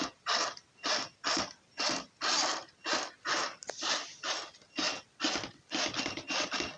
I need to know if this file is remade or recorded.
recorded